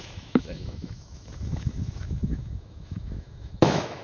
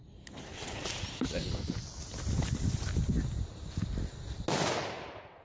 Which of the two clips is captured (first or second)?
second